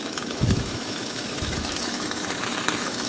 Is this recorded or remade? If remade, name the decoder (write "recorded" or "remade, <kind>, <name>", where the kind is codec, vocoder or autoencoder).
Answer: remade, autoencoder, DAC-VAE